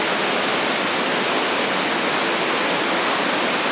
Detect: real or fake real